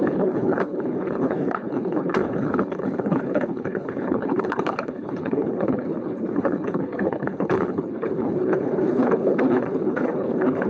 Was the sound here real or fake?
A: fake